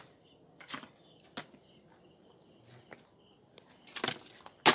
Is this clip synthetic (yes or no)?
no